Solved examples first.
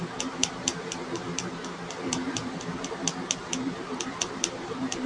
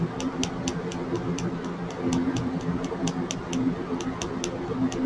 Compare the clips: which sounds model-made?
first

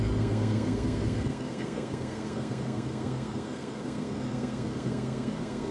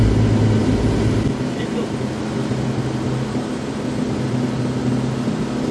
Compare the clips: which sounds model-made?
first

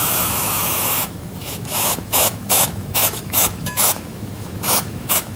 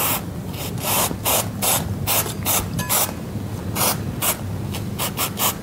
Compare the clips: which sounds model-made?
first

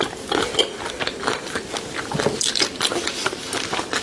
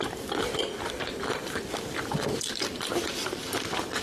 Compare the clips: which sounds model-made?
second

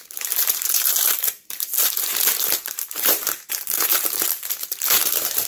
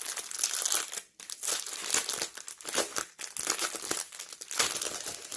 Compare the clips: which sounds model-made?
first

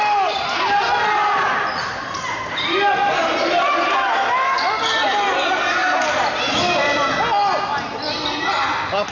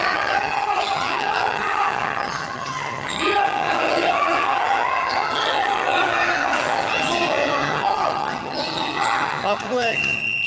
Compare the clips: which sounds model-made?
second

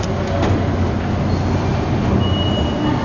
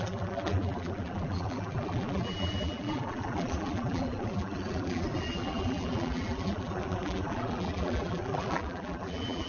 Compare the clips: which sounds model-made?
second